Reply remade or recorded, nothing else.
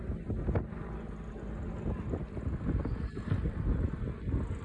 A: recorded